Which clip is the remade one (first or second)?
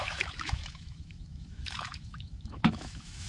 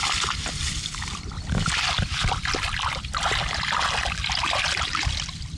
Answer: first